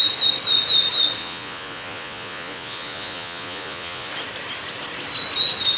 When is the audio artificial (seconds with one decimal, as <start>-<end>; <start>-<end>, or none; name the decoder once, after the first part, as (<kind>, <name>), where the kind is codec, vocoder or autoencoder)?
1.2-4.1 (vocoder, Vocos)

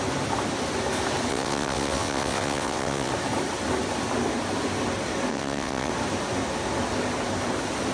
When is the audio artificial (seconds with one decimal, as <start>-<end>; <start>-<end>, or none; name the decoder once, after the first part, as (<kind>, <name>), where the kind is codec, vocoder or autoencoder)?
1.3-3.1 (vocoder, WaveNeXt); 5.3-5.9

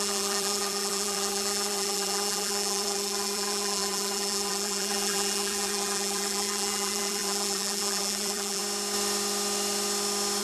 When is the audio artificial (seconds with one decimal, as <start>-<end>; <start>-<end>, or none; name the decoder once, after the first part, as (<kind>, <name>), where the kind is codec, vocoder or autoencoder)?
0.0-8.6 (vocoder, BigVGAN v2)

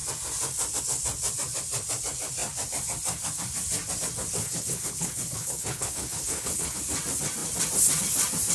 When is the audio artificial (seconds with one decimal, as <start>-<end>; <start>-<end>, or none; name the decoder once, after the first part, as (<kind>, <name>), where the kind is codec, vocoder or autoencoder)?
4.4-6.8 (codec, HILCodec)

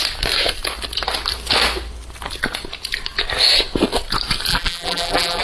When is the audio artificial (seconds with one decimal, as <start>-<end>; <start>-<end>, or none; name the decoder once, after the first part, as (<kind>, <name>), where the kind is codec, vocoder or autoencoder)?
4.5-5.4 (vocoder, BigVGAN v2)

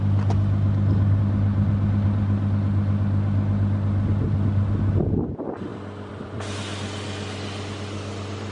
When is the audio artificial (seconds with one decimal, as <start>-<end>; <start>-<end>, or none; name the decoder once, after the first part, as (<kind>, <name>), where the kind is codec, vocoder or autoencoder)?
5.7-6.6 (vocoder, BigVGAN v2)

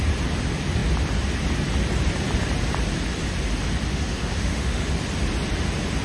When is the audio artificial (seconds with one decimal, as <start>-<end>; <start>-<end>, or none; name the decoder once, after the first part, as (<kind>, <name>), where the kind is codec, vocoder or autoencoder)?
3.9-4.9 (autoencoder, DAC-VAE)

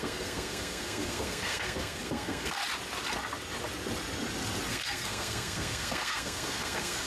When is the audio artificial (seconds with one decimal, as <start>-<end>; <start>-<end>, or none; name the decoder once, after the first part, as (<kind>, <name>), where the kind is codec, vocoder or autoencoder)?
0.0-2.6 (codec, SNAC); 4.7-7.1